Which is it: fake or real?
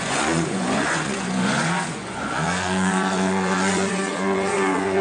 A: fake